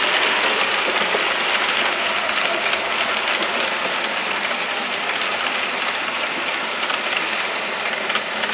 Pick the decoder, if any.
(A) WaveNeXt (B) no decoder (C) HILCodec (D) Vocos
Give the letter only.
B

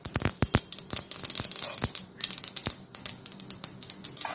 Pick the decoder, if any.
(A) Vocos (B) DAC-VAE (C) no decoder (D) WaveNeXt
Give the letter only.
C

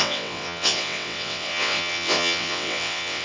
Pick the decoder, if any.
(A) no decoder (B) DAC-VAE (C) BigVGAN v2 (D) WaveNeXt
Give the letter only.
D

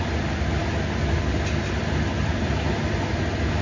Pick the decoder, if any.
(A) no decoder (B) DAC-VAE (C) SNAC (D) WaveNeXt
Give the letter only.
A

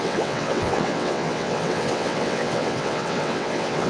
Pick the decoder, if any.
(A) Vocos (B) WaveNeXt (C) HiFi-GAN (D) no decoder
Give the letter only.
B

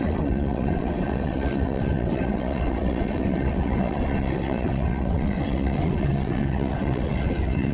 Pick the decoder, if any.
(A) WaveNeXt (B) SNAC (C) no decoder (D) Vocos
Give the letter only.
A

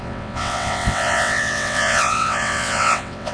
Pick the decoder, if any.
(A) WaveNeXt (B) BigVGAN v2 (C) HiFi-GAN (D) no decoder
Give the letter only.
A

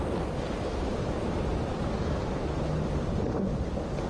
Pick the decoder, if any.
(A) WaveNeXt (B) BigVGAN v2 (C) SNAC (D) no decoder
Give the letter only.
D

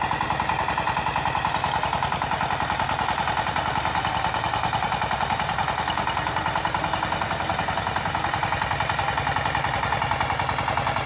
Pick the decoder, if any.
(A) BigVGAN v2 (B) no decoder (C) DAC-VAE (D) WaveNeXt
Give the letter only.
B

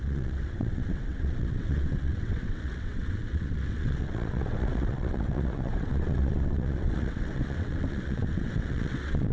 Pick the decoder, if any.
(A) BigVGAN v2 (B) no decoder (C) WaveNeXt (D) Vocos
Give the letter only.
C